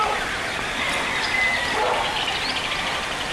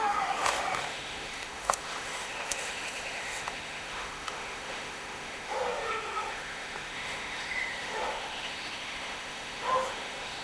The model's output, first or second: second